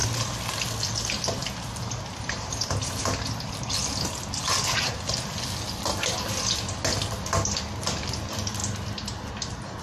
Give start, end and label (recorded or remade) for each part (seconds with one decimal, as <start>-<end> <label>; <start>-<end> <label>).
0.0-1.4 recorded; 1.4-3.5 remade; 3.5-9.8 recorded